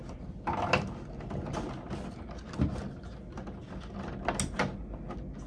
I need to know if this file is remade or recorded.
recorded